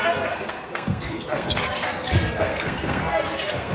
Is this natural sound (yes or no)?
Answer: no